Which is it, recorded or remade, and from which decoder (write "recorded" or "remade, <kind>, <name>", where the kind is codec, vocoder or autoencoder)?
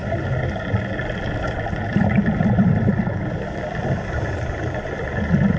recorded